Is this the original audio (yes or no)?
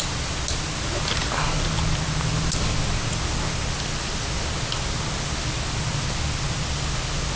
yes